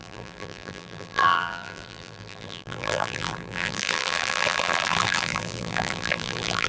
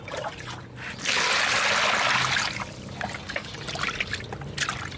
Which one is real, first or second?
second